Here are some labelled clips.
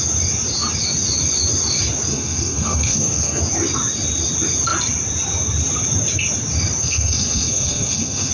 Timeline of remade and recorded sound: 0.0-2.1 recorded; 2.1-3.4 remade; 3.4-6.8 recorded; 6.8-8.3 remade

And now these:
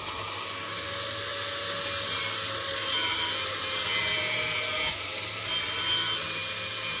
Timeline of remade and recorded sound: 0.0-4.0 recorded; 4.0-5.2 remade; 5.2-7.0 recorded

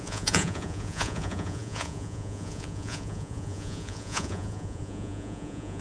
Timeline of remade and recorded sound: 0.0-5.8 remade